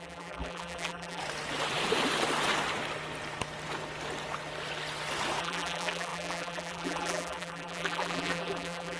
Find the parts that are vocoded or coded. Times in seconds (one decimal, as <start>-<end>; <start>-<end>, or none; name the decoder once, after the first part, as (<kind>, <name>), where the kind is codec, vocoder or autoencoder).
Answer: 0.0-1.2 (vocoder, BigVGAN v2); 5.4-9.0